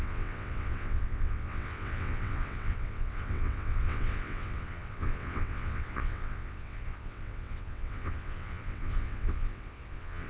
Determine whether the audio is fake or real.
fake